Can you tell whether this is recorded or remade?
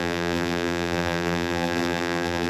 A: remade